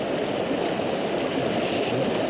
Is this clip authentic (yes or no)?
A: yes